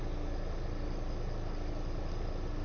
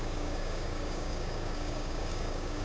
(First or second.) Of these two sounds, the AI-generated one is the second